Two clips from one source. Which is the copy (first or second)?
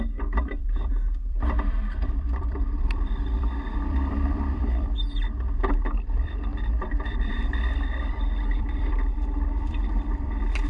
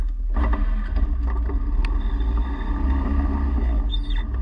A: first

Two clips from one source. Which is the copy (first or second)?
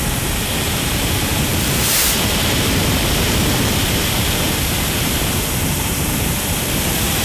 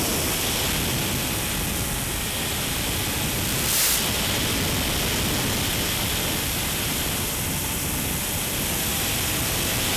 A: first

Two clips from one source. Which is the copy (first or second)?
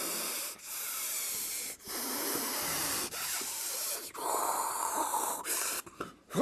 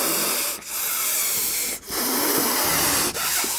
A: first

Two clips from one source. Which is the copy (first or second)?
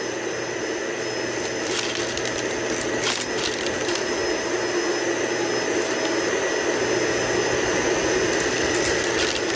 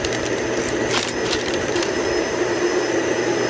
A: second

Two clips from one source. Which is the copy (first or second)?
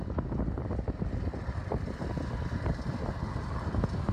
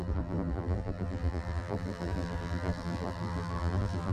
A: second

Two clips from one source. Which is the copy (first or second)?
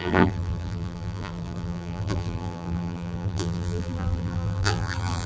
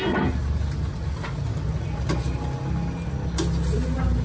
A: first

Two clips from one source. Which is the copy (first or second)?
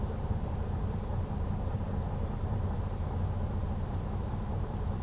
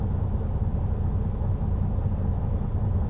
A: first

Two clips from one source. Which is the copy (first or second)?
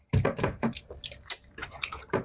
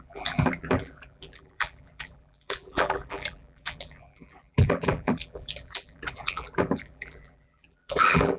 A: second